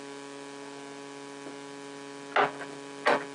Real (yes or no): yes